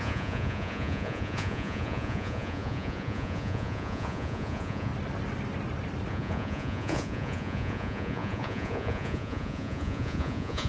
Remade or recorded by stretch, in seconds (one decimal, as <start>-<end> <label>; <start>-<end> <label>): 0.0-4.9 remade; 4.9-6.1 recorded; 6.1-10.7 remade